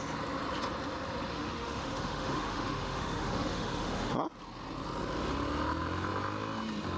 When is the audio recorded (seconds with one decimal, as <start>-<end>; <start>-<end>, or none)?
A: 0.0-1.3; 4.1-7.0